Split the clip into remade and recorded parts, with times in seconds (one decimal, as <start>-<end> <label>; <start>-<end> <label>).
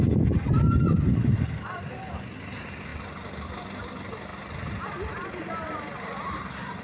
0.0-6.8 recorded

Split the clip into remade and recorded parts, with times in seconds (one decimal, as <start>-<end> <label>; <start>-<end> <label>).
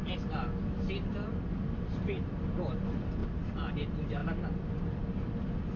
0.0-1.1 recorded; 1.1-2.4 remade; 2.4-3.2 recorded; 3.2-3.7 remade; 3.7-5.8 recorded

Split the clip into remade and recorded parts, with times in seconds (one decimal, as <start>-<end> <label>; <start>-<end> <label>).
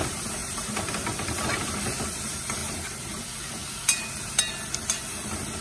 0.0-0.4 recorded; 0.4-0.9 remade; 0.9-2.6 recorded; 2.6-3.2 remade; 3.2-5.6 recorded